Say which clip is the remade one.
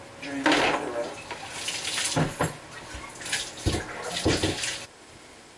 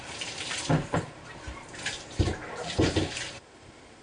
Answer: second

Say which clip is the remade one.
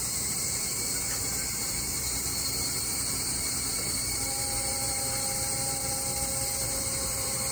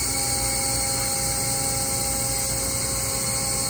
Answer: first